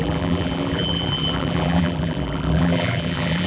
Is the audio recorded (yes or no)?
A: no